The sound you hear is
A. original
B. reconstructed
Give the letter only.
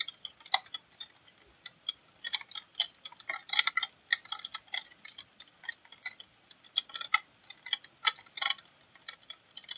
A